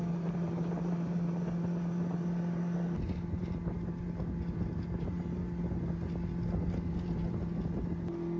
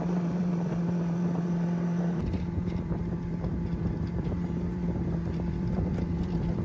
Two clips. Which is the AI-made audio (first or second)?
second